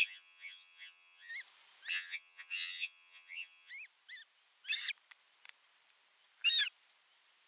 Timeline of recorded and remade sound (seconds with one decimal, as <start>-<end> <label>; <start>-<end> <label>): 0.0-1.3 remade; 1.3-1.9 recorded; 1.9-3.7 remade; 3.7-7.5 recorded